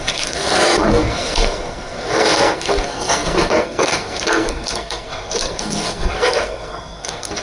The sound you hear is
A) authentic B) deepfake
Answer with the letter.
B